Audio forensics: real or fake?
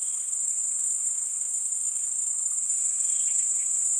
fake